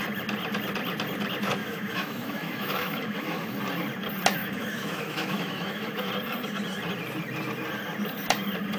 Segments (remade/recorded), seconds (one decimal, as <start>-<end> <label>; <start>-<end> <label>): 0.0-1.6 recorded; 1.6-3.6 remade; 3.6-4.4 recorded; 4.4-6.1 remade; 6.1-8.8 recorded